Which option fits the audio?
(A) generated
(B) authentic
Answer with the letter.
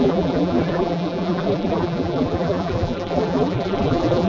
A